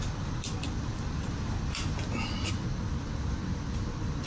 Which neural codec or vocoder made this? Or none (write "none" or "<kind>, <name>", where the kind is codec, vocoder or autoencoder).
none